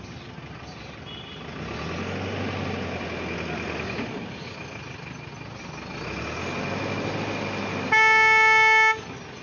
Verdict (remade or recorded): recorded